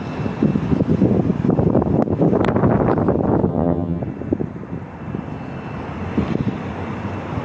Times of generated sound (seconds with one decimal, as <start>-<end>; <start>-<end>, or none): 3.5-4.0